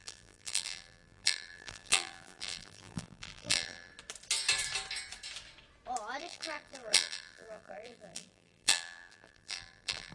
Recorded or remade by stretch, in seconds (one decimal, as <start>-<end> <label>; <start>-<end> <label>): 0.0-3.9 remade; 3.9-6.2 recorded; 6.2-10.1 remade